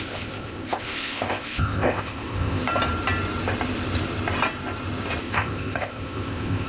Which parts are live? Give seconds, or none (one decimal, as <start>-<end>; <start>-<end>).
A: 2.6-5.2